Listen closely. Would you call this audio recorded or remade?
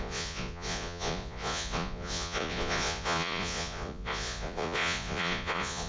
remade